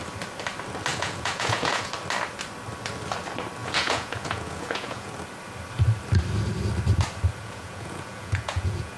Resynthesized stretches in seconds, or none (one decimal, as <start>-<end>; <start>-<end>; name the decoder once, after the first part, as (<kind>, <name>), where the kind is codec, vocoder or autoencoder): 0.9-1.9 (vocoder, Vocos); 3.6-5.1; 7.4-9.0